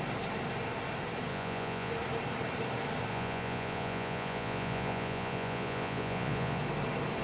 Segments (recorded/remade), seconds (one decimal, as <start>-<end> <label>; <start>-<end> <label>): 0.0-1.3 recorded; 1.3-1.9 remade; 1.9-3.1 recorded; 3.1-6.6 remade; 6.6-7.2 recorded